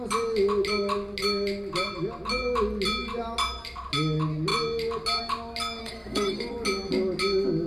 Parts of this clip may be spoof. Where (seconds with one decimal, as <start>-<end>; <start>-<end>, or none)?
5.8-6.5